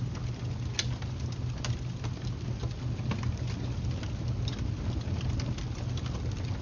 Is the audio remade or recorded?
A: recorded